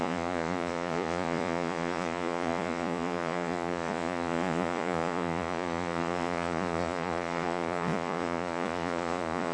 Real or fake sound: fake